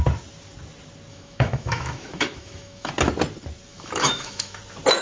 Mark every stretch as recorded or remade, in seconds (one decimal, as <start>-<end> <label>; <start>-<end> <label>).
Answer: 0.0-1.1 recorded; 1.1-2.9 remade; 2.9-3.7 recorded; 3.7-4.6 remade; 4.6-5.0 recorded